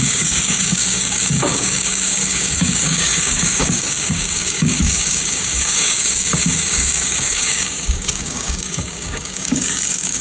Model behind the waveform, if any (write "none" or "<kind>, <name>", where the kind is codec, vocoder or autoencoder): codec, DAC